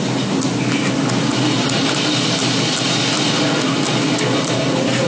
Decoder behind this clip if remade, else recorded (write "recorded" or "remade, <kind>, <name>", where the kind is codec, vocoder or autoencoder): recorded